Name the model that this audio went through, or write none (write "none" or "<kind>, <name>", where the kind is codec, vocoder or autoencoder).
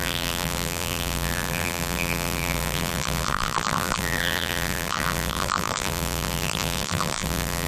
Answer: vocoder, BigVGAN v2